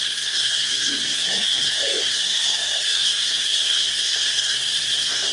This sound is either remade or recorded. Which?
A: remade